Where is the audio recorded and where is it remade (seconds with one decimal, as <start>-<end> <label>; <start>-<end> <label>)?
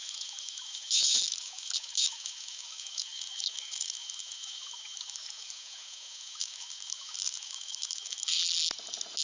0.0-8.4 remade; 8.4-9.2 recorded